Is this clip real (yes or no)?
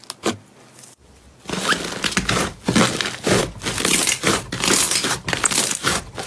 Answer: yes